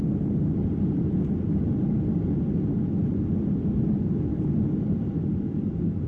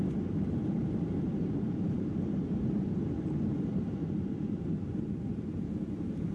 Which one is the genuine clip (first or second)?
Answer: first